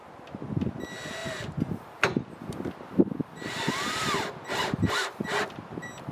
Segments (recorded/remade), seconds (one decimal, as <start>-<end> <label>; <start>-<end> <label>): 0.0-6.1 recorded

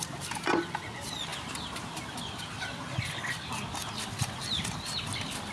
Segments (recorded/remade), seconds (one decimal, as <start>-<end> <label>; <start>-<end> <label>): 0.0-5.5 recorded